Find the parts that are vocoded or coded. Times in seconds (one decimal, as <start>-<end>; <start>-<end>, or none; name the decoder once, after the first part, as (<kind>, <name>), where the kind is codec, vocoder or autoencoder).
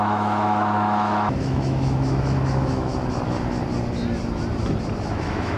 0.0-2.9 (autoencoder, DAC-VAE); 5.1-5.6